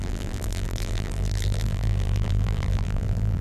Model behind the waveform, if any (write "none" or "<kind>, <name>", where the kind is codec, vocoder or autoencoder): vocoder, BigVGAN v2